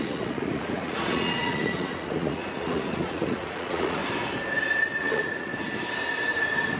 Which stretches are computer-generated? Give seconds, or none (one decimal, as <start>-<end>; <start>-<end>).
0.0-4.0; 5.0-5.5